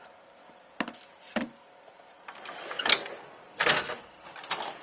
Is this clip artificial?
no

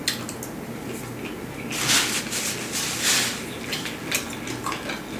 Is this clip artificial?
no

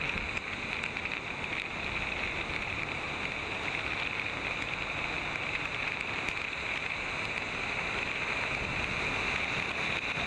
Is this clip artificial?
no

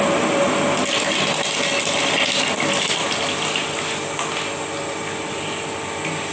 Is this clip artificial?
no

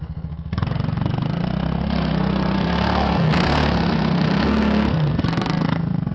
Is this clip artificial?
yes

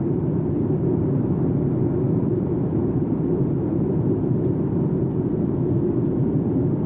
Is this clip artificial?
yes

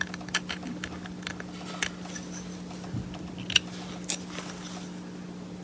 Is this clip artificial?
no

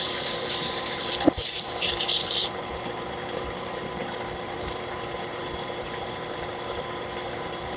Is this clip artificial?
yes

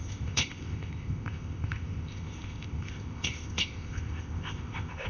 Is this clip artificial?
yes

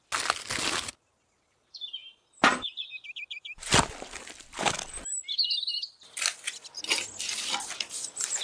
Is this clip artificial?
no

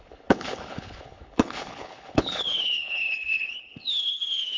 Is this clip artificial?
yes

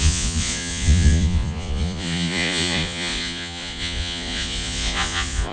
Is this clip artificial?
yes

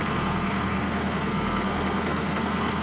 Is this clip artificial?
yes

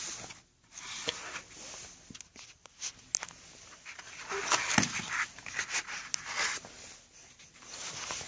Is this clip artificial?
no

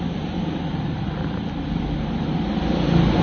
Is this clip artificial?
no